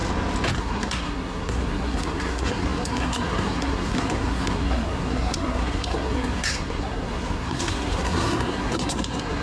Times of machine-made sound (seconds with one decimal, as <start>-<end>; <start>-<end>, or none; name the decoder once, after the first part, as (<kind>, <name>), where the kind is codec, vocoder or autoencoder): 0.6-9.4 (codec, SNAC)